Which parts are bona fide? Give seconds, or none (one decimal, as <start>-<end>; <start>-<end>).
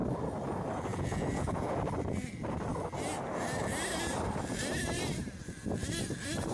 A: 0.0-0.9; 1.8-6.5